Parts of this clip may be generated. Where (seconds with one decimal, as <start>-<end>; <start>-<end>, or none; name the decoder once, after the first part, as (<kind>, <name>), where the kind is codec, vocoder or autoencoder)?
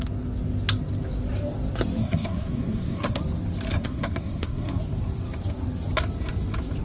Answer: 2.0-3.2 (codec, SNAC); 3.7-4.8